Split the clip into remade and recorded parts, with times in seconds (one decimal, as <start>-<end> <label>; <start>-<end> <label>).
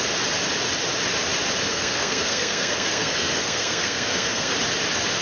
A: 0.0-1.7 recorded; 1.7-4.5 remade; 4.5-5.2 recorded